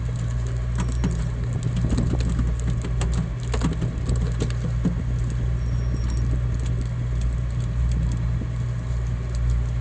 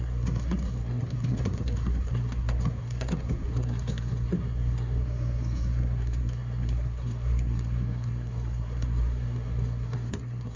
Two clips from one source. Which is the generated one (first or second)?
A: second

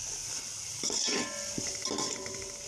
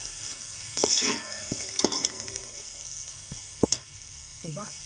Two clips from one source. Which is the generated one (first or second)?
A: second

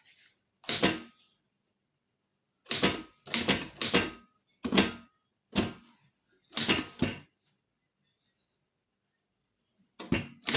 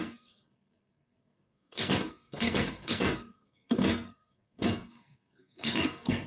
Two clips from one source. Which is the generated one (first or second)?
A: second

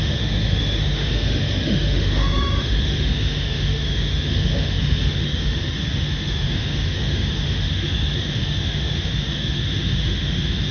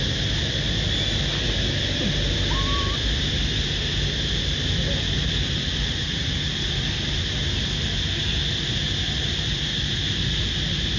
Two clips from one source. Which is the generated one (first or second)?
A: first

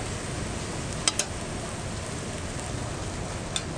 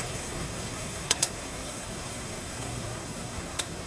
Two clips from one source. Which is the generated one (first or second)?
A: second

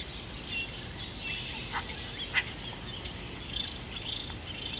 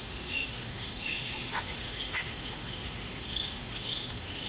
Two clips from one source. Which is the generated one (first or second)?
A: second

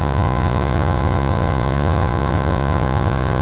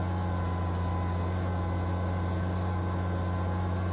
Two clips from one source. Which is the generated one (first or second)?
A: first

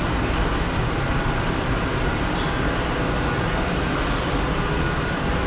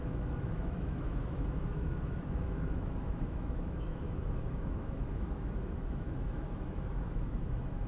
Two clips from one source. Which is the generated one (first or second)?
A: second